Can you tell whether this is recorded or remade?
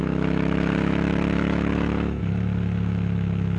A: remade